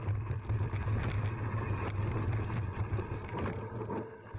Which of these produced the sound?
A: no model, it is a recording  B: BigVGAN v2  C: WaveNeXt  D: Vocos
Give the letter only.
A